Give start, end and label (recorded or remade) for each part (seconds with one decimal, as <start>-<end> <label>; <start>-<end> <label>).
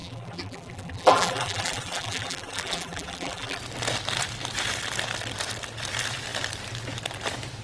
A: 0.0-3.6 remade; 3.6-7.6 recorded